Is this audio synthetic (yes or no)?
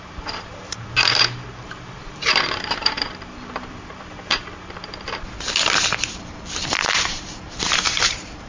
yes